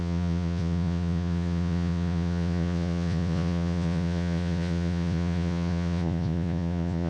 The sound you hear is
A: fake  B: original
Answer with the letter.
A